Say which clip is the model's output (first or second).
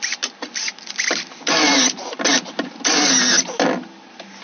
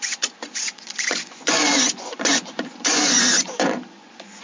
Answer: second